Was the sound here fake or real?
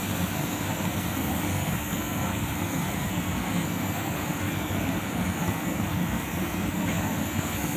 fake